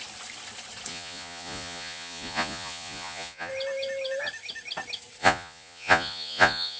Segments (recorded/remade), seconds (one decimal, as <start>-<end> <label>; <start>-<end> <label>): 0.0-0.9 recorded; 0.9-3.5 remade; 3.5-5.2 recorded; 5.2-6.8 remade

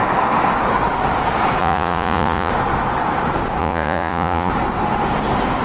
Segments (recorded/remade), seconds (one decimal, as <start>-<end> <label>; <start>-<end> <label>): 0.0-1.6 recorded; 1.6-2.5 remade; 2.5-3.6 recorded; 3.6-4.5 remade; 4.5-5.6 recorded